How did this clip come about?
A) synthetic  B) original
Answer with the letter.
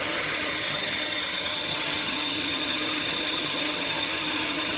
A